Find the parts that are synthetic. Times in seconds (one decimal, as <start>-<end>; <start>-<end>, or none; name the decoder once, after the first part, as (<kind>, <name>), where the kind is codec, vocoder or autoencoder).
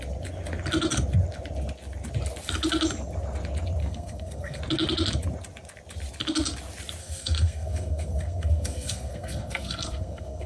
3.8-4.6 (codec, SNAC); 7.0-10.5